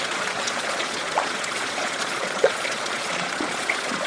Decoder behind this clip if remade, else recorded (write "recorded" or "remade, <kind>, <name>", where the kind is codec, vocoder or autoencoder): remade, vocoder, Vocos